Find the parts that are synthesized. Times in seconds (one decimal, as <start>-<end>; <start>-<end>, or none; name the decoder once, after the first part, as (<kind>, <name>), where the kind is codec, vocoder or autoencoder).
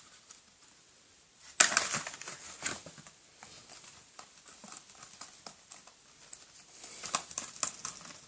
none